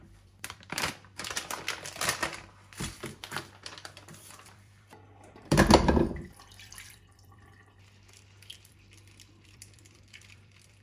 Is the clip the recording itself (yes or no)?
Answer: no